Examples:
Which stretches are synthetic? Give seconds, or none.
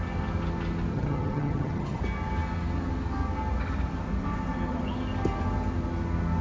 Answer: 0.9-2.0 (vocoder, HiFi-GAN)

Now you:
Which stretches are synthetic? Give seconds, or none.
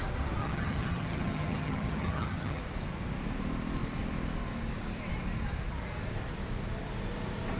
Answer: 0.4-2.6 (vocoder, HiFi-GAN)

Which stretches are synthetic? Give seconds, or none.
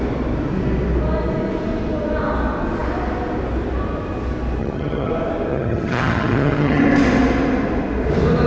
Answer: 4.6-5.1 (vocoder, HiFi-GAN); 5.5-6.8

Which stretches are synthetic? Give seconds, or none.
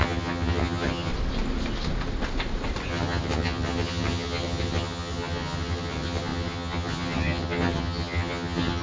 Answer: 0.0-1.1 (vocoder, HiFi-GAN); 2.9-8.8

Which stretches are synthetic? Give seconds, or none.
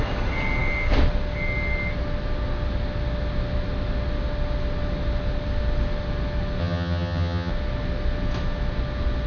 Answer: 6.6-7.5 (vocoder, HiFi-GAN)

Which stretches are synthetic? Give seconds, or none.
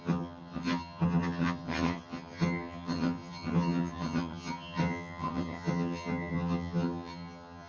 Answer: 0.0-7.7 (vocoder, HiFi-GAN)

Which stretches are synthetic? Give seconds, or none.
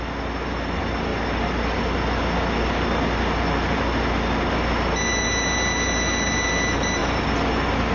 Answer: none